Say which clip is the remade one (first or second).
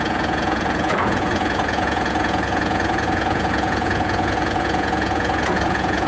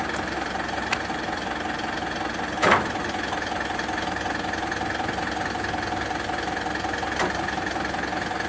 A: first